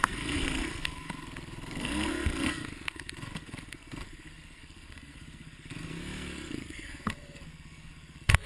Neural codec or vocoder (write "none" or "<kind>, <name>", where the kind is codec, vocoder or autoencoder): codec, SNAC